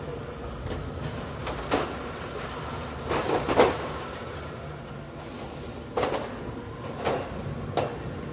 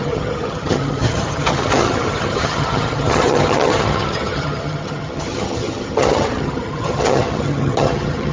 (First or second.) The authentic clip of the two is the first